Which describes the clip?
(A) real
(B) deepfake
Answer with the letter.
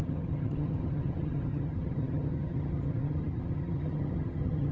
B